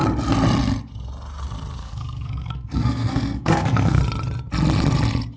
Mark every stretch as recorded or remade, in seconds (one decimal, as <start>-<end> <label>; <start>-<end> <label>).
0.0-1.8 recorded; 1.8-4.0 remade; 4.0-5.4 recorded